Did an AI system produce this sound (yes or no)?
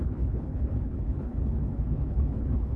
yes